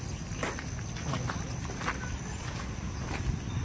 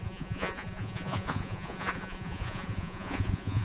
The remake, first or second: second